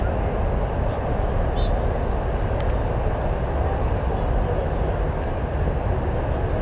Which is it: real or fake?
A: real